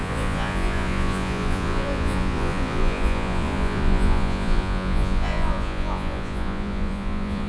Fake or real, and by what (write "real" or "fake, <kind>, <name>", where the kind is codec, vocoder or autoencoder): fake, vocoder, Vocos